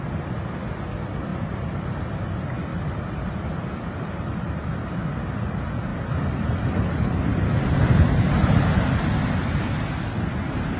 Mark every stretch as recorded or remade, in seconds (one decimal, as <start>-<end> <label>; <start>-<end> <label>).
0.0-1.3 recorded; 1.3-2.2 remade; 2.2-2.7 recorded; 2.7-5.2 remade; 5.2-5.9 recorded; 5.9-8.3 remade; 8.3-10.8 recorded